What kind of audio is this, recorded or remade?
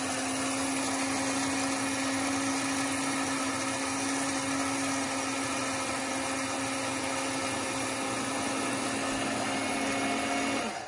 recorded